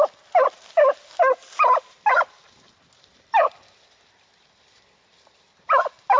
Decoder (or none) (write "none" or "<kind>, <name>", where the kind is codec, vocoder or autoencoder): none